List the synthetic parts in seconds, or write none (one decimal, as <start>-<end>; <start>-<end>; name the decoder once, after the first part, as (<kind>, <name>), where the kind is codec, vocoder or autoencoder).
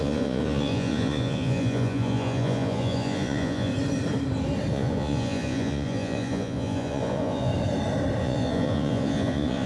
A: 0.0-3.7 (vocoder, Vocos); 4.7-7.5; 8.2-9.7